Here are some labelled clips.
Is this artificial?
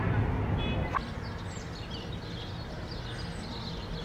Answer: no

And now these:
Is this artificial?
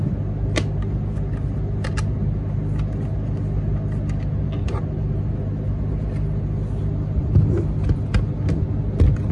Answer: no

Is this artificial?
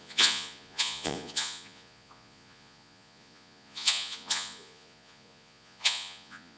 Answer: yes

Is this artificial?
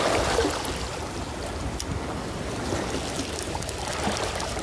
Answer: no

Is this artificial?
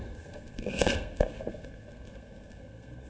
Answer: yes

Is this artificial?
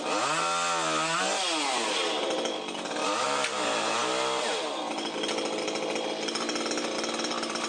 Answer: no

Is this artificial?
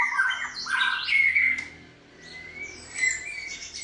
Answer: no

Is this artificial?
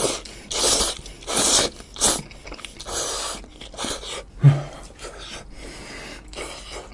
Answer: no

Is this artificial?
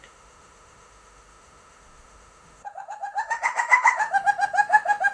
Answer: yes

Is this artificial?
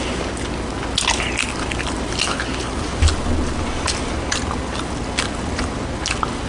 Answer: no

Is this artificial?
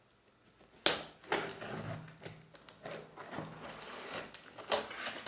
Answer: no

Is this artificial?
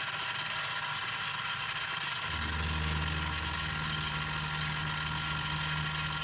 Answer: no